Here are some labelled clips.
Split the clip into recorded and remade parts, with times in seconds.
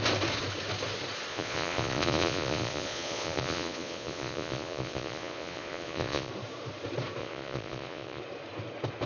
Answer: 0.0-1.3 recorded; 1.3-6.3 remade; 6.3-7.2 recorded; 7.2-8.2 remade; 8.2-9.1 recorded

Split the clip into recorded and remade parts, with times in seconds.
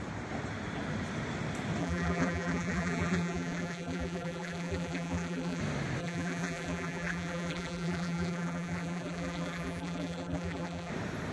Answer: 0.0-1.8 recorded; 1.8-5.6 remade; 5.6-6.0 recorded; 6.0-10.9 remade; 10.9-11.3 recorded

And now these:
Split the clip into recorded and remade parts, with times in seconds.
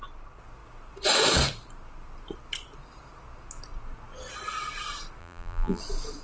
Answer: 0.0-5.2 recorded; 5.2-5.8 remade; 5.8-6.2 recorded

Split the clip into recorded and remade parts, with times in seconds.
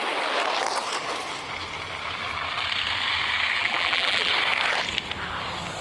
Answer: 0.0-3.6 recorded; 3.6-4.3 remade; 4.3-5.8 recorded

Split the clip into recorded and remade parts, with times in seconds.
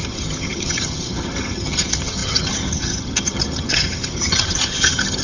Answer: 0.0-5.2 remade